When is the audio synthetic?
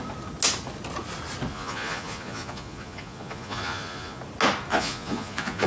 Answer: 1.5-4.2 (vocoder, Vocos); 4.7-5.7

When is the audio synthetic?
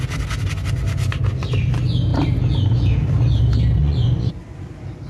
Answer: 3.8-4.3 (vocoder, Vocos)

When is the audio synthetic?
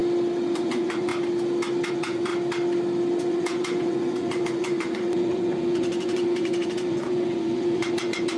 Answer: 0.5-1.1 (vocoder, Vocos); 1.9-2.3; 3.2-8.4